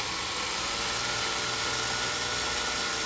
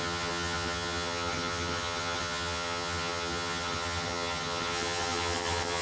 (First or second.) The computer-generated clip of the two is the second